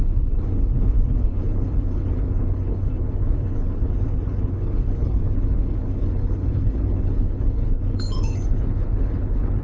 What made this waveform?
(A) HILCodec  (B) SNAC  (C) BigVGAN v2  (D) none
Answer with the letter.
A